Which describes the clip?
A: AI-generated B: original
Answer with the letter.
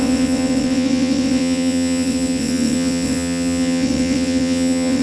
A